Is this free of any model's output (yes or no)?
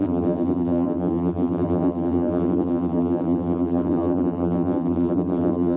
no